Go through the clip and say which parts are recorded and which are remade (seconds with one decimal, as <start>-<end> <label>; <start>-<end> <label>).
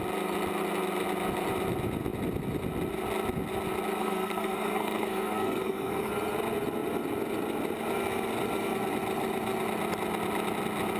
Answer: 0.0-4.0 recorded; 4.0-6.1 remade; 6.1-11.0 recorded